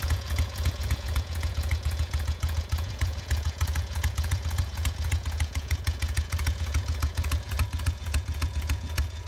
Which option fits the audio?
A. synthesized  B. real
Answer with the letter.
A